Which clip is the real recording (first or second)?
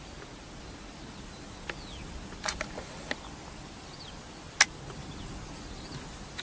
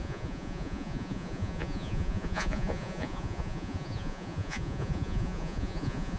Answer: first